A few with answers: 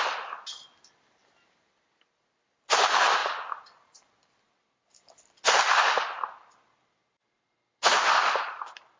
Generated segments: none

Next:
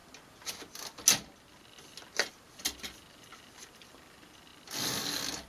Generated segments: none

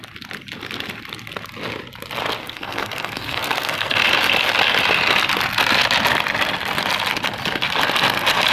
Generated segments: 2.4-4.0 (codec, SNAC)